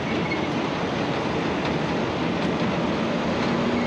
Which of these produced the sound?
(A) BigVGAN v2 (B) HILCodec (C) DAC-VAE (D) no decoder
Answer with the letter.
D